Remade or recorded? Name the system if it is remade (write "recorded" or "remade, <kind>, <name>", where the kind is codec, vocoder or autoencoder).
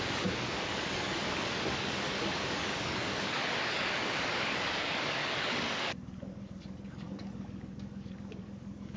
remade, codec, DAC